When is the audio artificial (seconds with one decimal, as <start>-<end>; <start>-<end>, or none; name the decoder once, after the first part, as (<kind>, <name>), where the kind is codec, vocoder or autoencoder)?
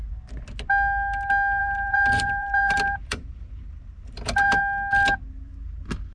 1.6-4.6 (vocoder, BigVGAN v2)